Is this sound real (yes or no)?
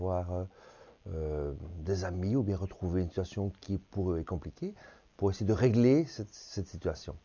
yes